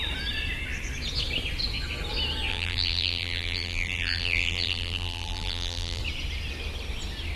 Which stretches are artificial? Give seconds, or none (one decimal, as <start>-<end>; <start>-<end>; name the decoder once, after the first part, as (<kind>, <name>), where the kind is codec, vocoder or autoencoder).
2.5-6.0 (vocoder, BigVGAN v2)